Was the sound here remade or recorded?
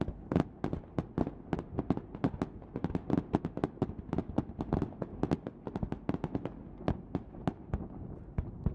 recorded